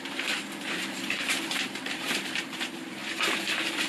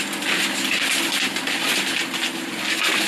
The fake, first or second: first